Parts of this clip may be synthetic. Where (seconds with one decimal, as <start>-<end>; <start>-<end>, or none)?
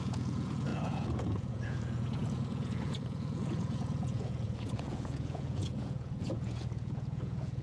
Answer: 0.0-7.6